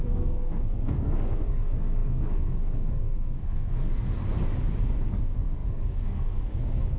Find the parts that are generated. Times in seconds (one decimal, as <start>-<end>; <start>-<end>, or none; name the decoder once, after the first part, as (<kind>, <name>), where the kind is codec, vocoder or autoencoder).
0.0-4.2 (codec, SNAC); 5.1-7.0